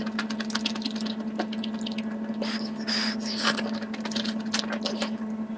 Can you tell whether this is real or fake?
real